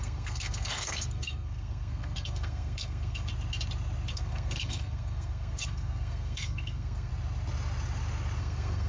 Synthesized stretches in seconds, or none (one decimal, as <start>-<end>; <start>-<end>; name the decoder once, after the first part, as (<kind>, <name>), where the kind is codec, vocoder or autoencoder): 0.0-3.3 (codec, SNAC); 4.1-7.1; 8.4-8.9